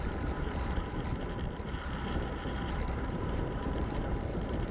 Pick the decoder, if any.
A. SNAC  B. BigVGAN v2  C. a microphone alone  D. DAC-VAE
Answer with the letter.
B